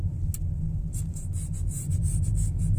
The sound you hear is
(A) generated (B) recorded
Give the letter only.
B